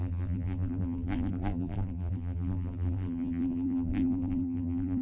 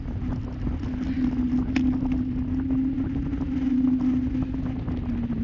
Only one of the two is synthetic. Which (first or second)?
first